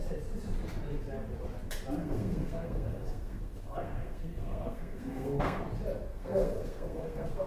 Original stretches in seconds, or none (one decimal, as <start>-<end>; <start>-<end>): 0.0-2.0; 5.6-6.1